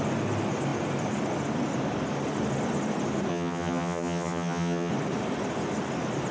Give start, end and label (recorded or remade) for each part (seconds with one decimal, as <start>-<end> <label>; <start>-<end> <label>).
0.0-3.3 recorded; 3.3-4.9 remade; 4.9-6.3 recorded

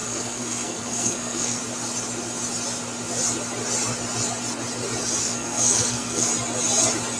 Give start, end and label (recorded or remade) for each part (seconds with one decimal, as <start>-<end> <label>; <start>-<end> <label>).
0.0-1.6 remade; 1.6-5.2 recorded; 5.2-6.3 remade; 6.3-7.2 recorded

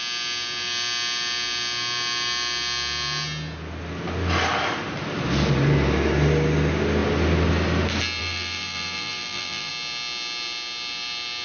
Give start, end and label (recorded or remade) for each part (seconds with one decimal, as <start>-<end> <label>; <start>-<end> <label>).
0.0-8.2 recorded; 8.2-9.7 remade; 9.7-11.4 recorded

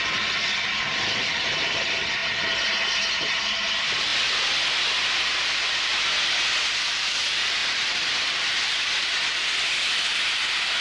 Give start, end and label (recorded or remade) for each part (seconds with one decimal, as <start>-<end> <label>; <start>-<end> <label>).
0.0-2.2 remade; 2.2-3.1 recorded; 3.1-4.1 remade; 4.1-5.3 recorded; 5.3-5.9 remade; 5.9-6.6 recorded; 6.6-10.8 remade